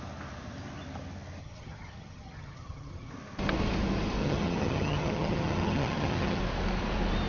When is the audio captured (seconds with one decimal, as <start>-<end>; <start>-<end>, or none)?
0.0-1.4; 3.1-4.2; 6.4-7.3